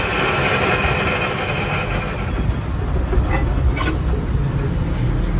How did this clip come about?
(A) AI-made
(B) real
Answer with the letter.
B